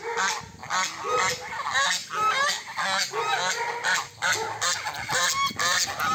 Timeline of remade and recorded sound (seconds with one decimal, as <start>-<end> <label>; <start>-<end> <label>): 0.0-6.1 recorded